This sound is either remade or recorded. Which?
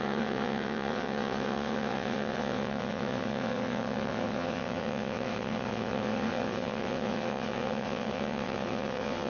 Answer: remade